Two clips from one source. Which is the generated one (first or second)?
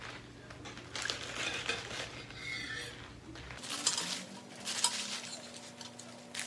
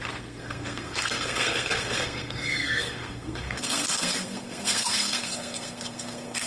second